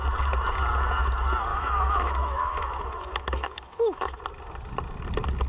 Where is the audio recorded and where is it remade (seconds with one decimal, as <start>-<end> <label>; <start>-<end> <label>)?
0.0-1.5 recorded; 1.5-4.2 remade; 4.2-5.5 recorded